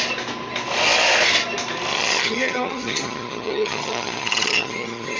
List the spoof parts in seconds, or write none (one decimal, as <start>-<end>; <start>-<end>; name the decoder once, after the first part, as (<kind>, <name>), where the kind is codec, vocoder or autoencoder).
1.9-5.2 (vocoder, HiFi-GAN)